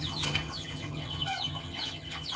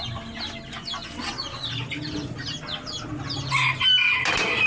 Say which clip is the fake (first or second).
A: first